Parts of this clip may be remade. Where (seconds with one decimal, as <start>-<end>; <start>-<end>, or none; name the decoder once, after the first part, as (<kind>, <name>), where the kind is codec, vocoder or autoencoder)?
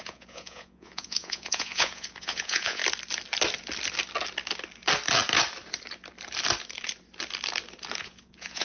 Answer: 0.0-2.8 (vocoder, Vocos); 8.0-8.6